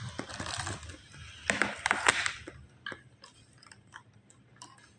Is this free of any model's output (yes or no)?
yes